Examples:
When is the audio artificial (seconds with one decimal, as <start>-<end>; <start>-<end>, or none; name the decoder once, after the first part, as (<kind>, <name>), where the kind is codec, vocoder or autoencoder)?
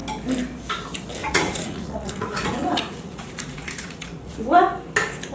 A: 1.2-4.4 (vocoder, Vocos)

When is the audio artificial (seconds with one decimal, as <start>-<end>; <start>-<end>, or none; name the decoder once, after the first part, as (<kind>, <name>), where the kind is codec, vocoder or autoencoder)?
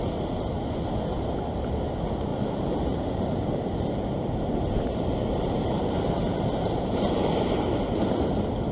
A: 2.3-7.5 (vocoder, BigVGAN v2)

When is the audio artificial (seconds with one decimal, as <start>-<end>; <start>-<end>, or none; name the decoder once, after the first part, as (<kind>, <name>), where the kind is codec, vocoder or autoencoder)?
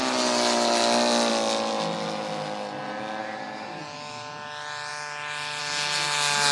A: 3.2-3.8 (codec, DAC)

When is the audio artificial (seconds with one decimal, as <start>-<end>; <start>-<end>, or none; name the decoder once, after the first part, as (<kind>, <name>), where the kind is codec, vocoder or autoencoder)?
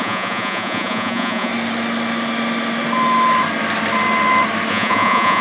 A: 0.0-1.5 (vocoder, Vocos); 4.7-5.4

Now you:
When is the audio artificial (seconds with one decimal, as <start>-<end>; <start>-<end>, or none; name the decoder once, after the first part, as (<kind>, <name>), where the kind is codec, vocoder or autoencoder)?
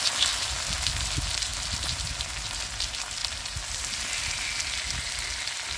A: none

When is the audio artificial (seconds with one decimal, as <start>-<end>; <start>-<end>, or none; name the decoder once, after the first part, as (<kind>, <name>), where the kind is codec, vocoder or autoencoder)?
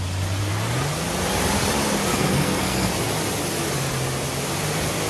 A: 2.1-3.0 (codec, SNAC)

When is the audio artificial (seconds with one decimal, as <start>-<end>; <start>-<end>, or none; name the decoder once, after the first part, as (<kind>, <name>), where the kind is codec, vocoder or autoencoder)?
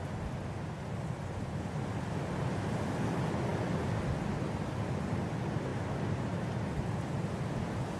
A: none